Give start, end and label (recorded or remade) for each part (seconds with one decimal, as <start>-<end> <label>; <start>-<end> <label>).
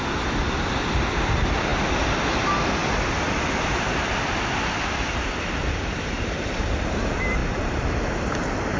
0.0-2.8 recorded; 2.8-6.6 remade; 6.6-7.4 recorded; 7.4-8.0 remade; 8.0-8.8 recorded